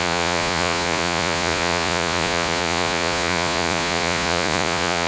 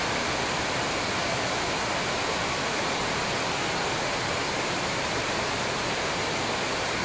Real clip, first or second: second